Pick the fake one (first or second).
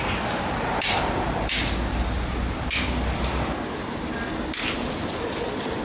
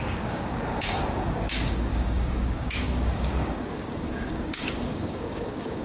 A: second